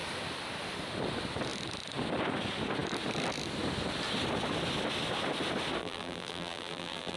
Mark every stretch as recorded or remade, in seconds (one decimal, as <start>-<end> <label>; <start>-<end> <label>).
0.0-5.8 recorded; 5.8-7.2 remade